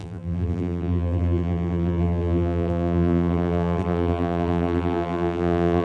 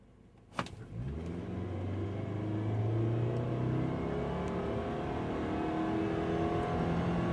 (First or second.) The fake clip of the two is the first